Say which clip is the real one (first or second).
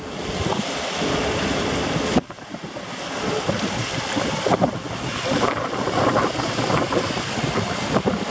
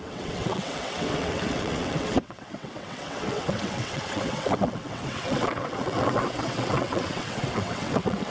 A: first